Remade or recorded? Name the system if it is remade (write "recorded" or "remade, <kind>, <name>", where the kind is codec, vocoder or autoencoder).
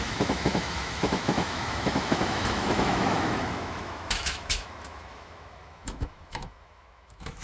remade, autoencoder, DAC-VAE